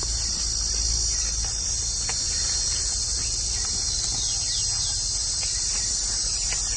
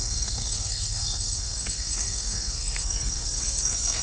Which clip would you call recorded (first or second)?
first